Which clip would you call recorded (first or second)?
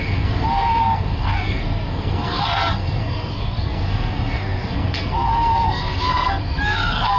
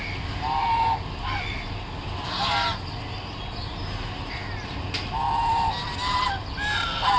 second